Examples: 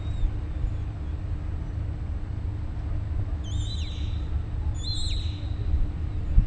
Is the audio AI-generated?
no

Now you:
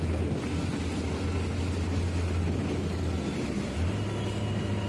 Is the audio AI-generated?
no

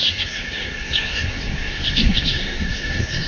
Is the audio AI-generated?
yes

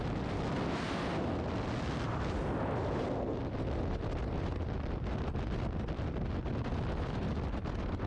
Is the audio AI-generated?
no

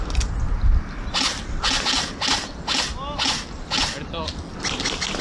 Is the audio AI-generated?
no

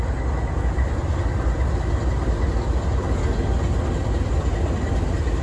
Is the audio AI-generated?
no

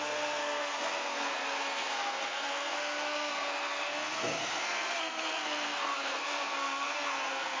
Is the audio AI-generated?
yes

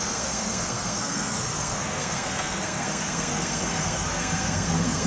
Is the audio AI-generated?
yes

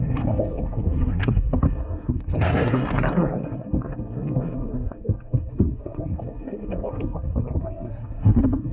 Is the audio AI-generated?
yes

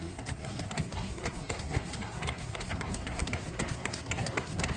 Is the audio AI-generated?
yes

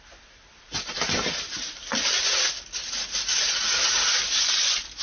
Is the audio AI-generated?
no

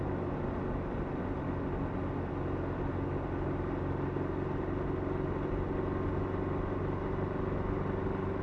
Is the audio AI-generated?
no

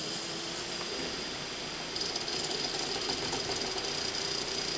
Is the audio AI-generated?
no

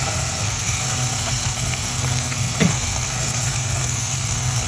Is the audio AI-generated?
yes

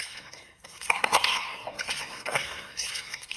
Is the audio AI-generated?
yes